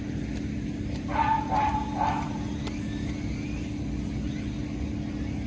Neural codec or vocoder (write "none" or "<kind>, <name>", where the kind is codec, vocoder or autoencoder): none